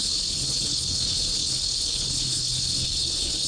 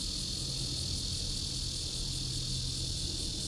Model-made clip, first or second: first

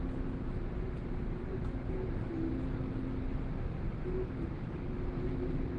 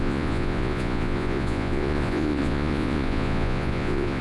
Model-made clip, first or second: second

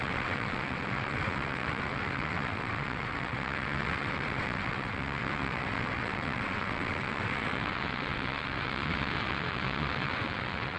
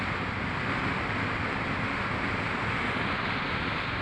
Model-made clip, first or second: first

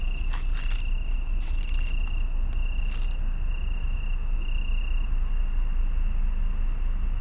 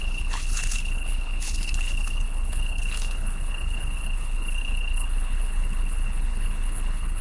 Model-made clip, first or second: second